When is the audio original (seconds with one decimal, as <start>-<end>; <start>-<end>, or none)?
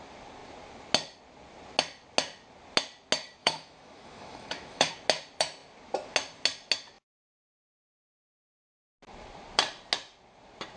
0.0-3.4; 4.9-10.8